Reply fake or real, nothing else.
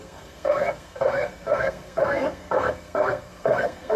fake